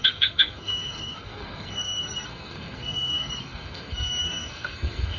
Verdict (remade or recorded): remade